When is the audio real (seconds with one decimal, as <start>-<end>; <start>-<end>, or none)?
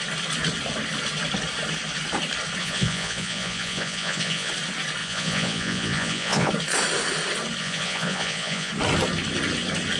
0.0-2.6; 4.5-5.0; 6.5-7.6; 8.7-10.0